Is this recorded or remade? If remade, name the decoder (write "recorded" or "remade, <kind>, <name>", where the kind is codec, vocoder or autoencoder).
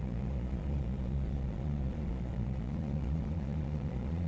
remade, vocoder, Vocos